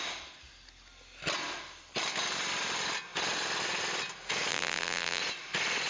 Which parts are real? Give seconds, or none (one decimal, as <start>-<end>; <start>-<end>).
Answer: 0.0-4.5; 5.2-5.9